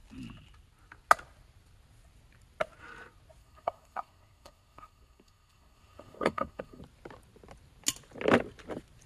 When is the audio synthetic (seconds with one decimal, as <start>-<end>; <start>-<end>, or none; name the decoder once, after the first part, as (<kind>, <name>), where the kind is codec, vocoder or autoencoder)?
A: 3.4-6.8 (codec, SNAC)